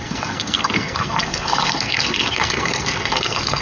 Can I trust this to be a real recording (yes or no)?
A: no